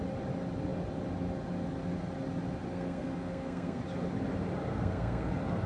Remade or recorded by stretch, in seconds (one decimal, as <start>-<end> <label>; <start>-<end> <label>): 0.0-2.7 recorded; 2.7-3.8 remade; 3.8-4.7 recorded; 4.7-5.3 remade; 5.3-5.7 recorded